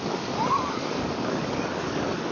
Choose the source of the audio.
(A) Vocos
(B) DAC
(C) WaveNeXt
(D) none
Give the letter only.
B